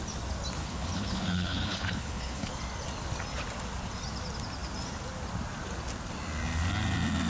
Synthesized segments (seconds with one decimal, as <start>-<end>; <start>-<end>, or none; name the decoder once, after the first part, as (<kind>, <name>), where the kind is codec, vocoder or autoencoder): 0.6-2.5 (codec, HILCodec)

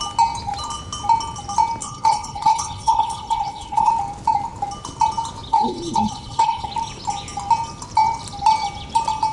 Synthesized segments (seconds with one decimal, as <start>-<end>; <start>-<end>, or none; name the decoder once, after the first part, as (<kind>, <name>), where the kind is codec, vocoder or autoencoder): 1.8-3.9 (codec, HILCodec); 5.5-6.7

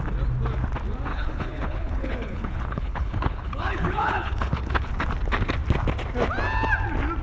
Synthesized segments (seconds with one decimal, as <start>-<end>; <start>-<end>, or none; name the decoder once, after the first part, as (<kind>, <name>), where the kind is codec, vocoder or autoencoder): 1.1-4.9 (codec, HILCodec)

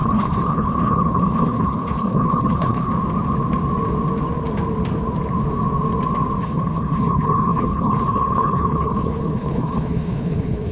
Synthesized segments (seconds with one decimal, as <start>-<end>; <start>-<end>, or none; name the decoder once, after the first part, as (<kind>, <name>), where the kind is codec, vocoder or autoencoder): 0.0-2.9 (codec, HILCodec); 6.4-10.7

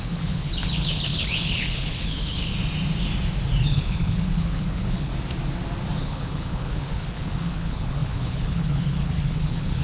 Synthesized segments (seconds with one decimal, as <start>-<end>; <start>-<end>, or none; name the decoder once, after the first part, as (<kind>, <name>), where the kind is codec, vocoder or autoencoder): 0.0-2.5 (codec, HILCodec); 3.6-5.1; 6.0-9.8

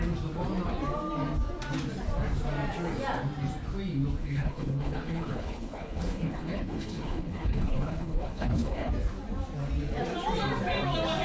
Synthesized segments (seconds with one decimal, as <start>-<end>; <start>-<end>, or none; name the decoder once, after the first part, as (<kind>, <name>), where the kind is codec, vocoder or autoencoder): 4.2-8.9 (codec, HILCodec)

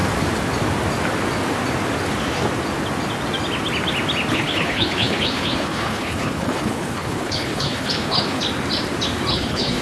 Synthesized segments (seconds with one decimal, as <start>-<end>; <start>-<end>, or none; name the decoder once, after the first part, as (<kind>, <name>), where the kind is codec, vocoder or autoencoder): 4.3-8.4 (codec, HILCodec); 9.3-9.8

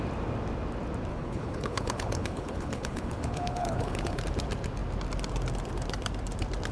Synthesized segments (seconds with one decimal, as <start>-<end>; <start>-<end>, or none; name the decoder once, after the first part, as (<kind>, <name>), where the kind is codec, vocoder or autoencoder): 1.1-4.2 (codec, HILCodec)